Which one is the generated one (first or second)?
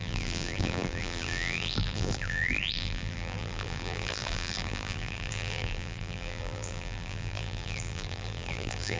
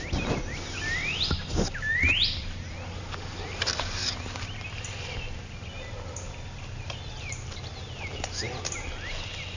first